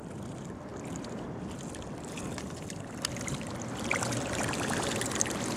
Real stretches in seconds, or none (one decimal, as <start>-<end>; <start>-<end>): 0.0-5.6

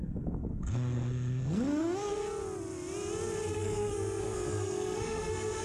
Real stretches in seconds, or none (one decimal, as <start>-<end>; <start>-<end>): 2.2-3.5

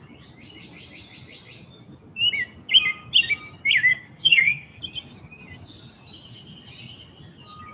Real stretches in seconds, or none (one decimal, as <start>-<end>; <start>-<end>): 0.0-3.9; 4.8-7.7

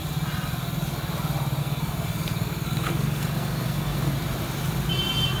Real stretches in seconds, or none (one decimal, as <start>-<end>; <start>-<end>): 0.0-1.6; 4.1-5.4

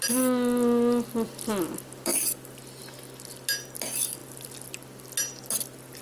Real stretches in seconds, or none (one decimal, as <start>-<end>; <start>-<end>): 0.0-6.0

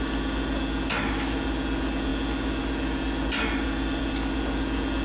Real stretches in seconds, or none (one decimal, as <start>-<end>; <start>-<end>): 0.0-5.0

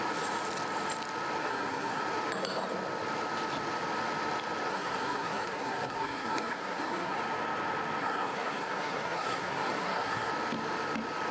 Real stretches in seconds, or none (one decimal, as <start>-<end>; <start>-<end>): 0.0-1.4; 2.0-4.7; 7.2-8.0; 10.3-11.3